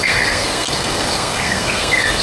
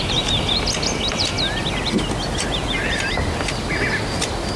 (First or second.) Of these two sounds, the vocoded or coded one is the first